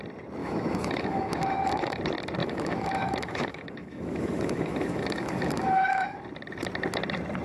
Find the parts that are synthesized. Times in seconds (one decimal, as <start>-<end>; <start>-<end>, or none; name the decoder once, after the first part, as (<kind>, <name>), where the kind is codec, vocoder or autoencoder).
0.4-2.0 (autoencoder, DAC-VAE); 2.4-6.2